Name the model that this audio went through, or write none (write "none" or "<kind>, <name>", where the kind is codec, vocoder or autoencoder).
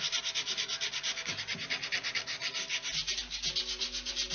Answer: none